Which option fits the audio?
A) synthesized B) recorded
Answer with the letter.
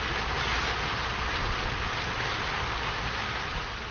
B